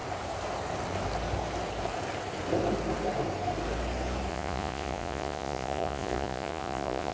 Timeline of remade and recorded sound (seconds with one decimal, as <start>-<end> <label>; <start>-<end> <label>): 0.0-4.3 recorded; 4.3-7.1 remade